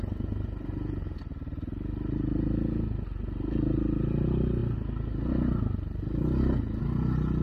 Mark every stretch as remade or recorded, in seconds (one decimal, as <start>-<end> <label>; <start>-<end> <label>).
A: 0.0-7.4 recorded